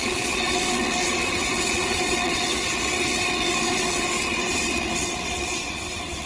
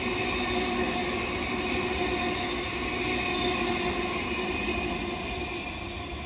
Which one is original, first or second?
second